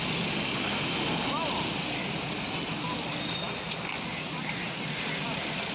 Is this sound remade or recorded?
recorded